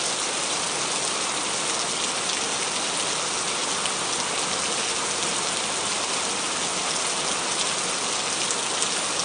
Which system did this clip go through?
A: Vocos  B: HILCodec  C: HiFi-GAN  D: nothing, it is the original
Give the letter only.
D